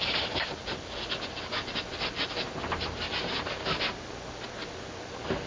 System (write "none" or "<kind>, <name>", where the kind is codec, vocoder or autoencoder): none